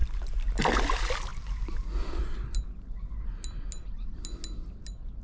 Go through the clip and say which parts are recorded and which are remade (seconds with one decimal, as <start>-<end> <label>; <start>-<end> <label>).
0.0-5.2 recorded

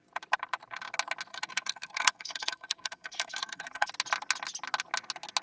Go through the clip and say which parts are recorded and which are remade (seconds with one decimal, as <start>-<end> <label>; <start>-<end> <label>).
0.0-1.3 recorded; 1.3-3.9 remade; 3.9-5.4 recorded

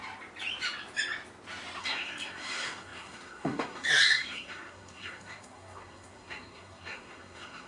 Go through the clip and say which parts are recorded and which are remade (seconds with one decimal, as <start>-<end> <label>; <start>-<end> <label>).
0.0-1.8 recorded; 1.8-7.7 remade